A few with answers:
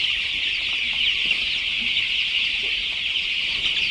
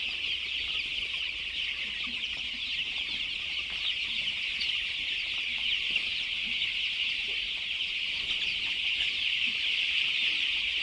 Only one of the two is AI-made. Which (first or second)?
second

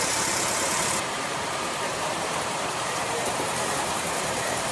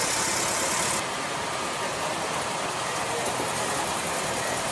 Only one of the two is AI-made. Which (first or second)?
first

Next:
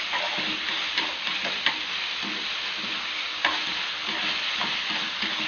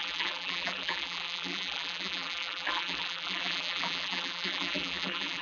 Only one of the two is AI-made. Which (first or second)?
second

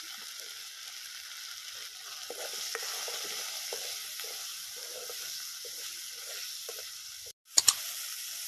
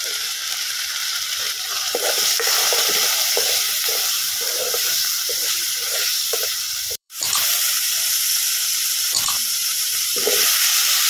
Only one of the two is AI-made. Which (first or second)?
second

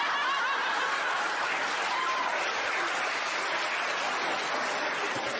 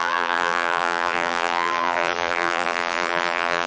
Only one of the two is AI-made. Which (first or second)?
second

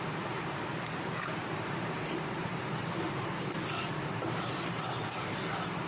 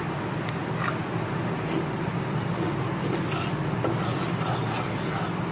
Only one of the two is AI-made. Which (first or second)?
first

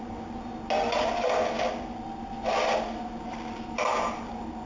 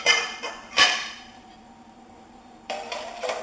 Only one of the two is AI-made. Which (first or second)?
second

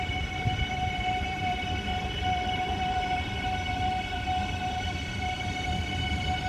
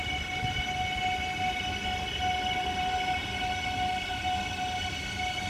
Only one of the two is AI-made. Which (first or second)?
first